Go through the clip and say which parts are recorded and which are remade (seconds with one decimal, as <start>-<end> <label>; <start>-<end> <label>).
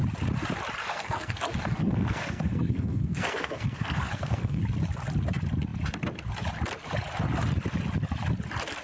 0.0-0.8 recorded; 0.8-4.6 remade; 4.6-8.8 recorded